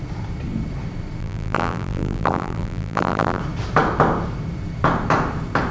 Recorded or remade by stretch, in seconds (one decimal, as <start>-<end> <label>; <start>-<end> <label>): 0.0-1.2 recorded; 1.2-3.4 remade; 3.4-5.7 recorded